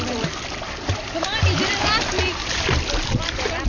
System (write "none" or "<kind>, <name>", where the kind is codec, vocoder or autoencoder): none